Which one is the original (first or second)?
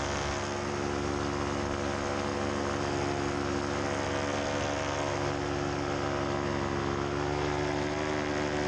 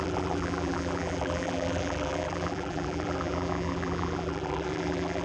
first